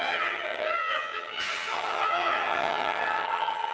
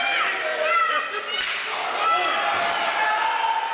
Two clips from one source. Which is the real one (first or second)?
second